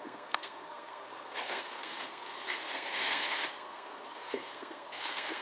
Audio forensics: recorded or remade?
remade